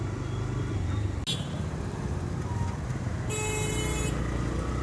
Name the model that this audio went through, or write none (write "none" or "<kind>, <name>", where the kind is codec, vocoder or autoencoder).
none